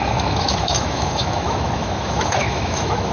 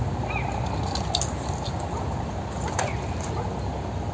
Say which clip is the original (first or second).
second